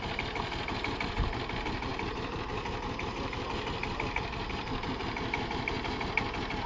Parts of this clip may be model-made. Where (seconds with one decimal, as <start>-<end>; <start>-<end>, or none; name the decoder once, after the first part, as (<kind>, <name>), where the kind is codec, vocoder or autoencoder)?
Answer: none